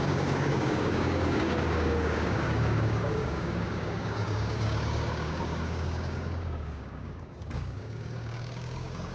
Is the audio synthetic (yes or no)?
yes